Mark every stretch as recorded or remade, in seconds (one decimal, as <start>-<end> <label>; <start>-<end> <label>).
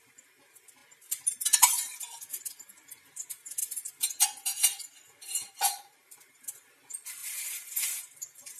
0.0-0.8 remade; 0.8-2.4 recorded; 2.4-3.6 remade; 3.6-5.6 recorded; 5.6-8.6 remade